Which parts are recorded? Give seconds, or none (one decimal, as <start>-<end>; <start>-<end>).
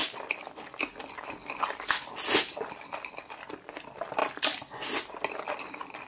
0.0-6.1